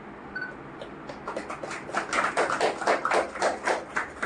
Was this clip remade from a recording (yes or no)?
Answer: no